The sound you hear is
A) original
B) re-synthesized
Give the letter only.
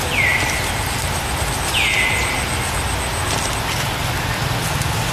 A